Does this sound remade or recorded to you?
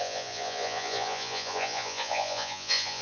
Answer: remade